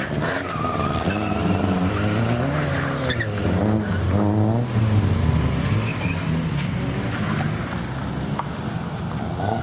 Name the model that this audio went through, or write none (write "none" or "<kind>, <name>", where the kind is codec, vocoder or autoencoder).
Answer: none